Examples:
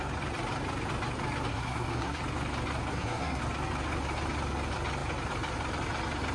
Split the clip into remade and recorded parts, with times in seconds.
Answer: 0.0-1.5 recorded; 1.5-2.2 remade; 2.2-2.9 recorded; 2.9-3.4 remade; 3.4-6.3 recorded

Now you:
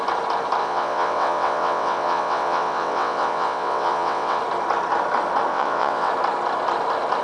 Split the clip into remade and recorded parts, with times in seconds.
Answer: 0.0-0.6 recorded; 0.6-4.4 remade; 4.4-5.5 recorded; 5.5-6.1 remade; 6.1-7.2 recorded

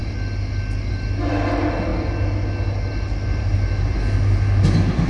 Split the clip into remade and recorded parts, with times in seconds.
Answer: 0.0-5.1 recorded

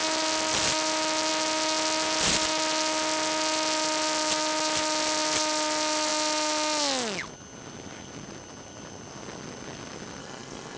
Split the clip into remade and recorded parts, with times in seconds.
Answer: 0.0-10.2 recorded; 10.2-10.8 remade